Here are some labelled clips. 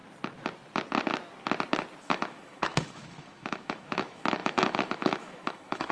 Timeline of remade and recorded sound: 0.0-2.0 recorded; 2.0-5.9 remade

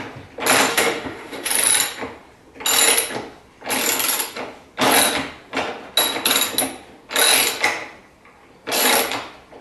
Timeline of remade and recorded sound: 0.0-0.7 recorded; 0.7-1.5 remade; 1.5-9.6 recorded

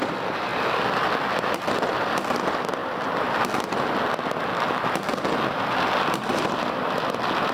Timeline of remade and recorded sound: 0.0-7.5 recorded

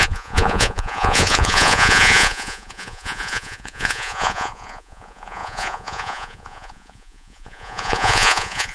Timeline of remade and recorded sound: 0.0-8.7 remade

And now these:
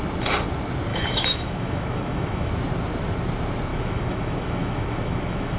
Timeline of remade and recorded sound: 0.0-0.9 recorded; 0.9-2.5 remade; 2.5-3.7 recorded; 3.7-5.6 remade

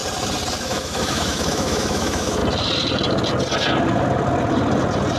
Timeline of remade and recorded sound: 0.0-0.6 recorded; 0.6-2.4 remade; 2.4-5.2 recorded

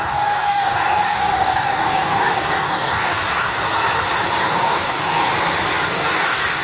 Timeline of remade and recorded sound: 0.0-3.5 remade; 3.5-4.4 recorded; 4.4-5.3 remade; 5.3-5.9 recorded; 5.9-6.6 remade

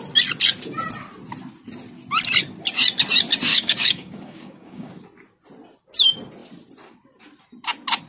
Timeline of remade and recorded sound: 0.0-3.5 recorded; 3.5-4.9 remade; 4.9-8.1 recorded